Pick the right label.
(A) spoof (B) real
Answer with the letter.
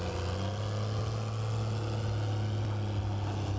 B